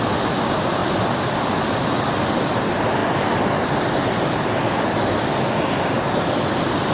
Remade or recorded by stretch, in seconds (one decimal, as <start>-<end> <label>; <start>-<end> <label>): 0.0-6.9 recorded

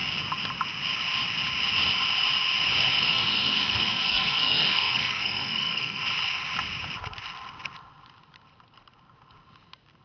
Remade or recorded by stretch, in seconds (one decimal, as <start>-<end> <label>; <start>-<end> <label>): 0.0-2.8 recorded; 2.8-6.0 remade; 6.0-10.0 recorded

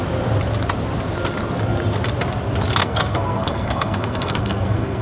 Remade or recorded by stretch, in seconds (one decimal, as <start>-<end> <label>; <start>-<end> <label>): 0.0-2.8 recorded; 2.8-5.0 remade

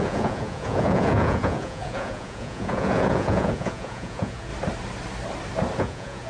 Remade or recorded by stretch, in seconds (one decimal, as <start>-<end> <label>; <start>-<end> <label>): 0.0-4.5 remade; 4.5-5.8 recorded; 5.8-6.3 remade

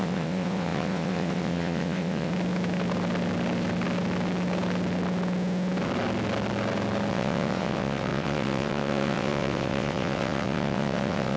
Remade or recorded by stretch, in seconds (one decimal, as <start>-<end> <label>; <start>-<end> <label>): 0.0-2.3 remade; 2.3-7.1 recorded; 7.1-11.4 remade

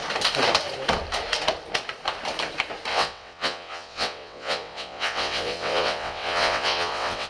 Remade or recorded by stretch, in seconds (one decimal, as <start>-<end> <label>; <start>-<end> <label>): 0.0-2.9 recorded; 2.9-7.3 remade

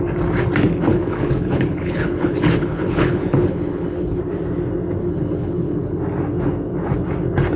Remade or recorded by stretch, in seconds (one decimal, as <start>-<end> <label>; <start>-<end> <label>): 0.0-0.9 recorded; 0.9-4.2 remade; 4.2-5.0 recorded; 5.0-6.0 remade; 6.0-7.6 recorded